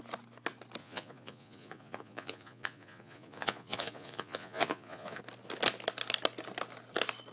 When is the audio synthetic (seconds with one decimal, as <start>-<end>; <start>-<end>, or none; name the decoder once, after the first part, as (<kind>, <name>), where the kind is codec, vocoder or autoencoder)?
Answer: 0.8-5.2 (vocoder, Vocos)

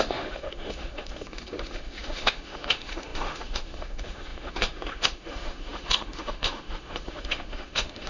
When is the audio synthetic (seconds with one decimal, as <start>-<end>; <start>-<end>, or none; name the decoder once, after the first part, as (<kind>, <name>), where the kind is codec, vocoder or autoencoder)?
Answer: 0.0-8.1 (autoencoder, DAC-VAE)